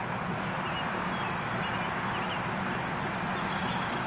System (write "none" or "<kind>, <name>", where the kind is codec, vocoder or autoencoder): none